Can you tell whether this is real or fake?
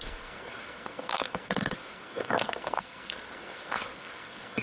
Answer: fake